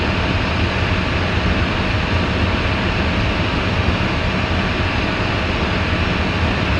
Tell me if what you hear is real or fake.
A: real